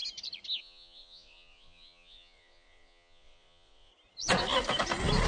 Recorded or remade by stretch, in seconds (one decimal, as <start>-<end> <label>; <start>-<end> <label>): 0.0-0.6 recorded; 0.6-3.9 remade; 3.9-5.3 recorded